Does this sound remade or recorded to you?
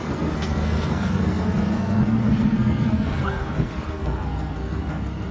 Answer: remade